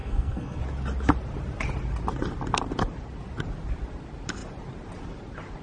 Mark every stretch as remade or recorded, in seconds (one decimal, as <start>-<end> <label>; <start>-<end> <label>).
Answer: 0.0-0.6 remade; 0.6-5.6 recorded